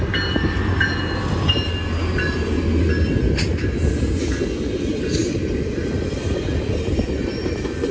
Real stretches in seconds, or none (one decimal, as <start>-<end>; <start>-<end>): 0.0-5.2; 7.1-7.9